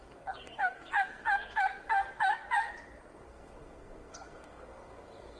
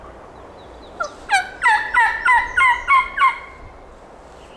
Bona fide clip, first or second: second